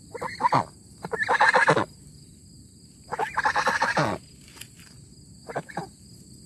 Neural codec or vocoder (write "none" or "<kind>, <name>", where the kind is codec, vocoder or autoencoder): none